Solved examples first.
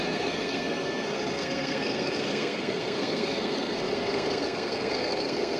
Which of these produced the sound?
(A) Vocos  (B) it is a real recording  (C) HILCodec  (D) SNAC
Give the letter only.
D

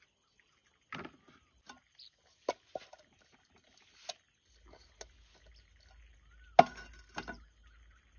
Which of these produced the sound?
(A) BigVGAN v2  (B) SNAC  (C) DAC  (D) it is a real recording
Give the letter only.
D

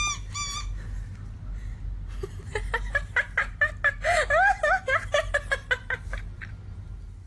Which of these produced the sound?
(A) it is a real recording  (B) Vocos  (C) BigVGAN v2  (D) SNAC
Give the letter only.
A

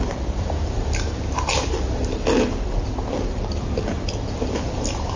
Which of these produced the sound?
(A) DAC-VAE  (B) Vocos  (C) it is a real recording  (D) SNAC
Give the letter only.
C